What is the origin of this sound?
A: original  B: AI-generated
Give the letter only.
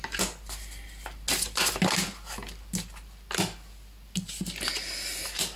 A